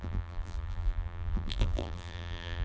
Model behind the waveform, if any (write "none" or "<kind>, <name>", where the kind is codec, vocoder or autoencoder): vocoder, BigVGAN v2